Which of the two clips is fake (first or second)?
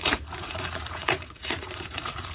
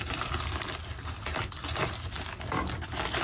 first